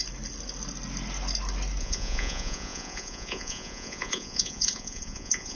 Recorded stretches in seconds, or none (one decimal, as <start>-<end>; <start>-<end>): 0.0-1.8